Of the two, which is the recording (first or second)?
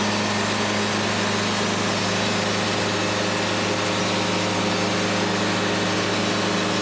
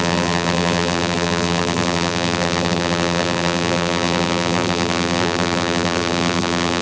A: first